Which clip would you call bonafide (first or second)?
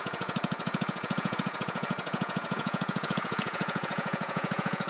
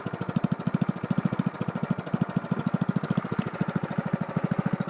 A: second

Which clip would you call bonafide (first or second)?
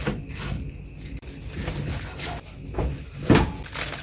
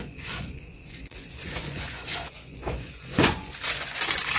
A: first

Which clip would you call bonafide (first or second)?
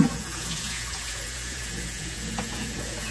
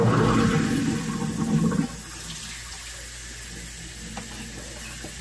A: second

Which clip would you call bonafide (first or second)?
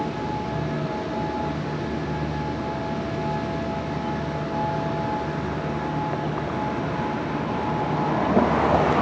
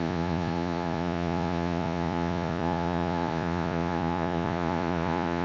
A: first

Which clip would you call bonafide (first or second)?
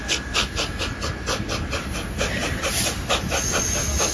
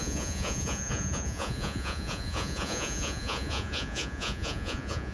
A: first